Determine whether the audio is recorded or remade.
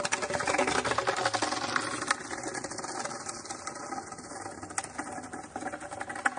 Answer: recorded